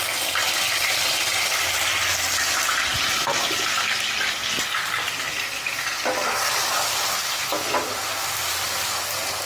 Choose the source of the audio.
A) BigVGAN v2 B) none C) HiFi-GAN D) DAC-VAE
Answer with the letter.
B